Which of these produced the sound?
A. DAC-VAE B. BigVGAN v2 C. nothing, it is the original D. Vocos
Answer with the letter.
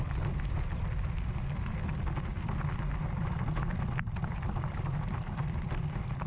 C